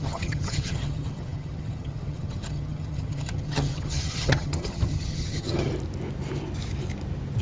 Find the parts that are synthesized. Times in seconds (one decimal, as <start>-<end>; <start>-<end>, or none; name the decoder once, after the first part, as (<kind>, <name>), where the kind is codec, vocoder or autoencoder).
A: 0.0-5.7 (vocoder, HiFi-GAN)